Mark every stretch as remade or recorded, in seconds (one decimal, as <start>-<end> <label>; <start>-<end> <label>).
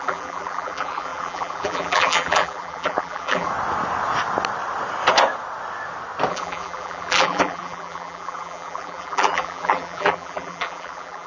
0.0-3.5 remade; 3.5-6.3 recorded; 6.3-11.3 remade